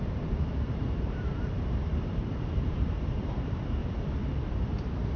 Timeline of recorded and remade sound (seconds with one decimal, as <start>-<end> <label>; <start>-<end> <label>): 0.0-3.8 remade; 3.8-4.7 recorded; 4.7-5.2 remade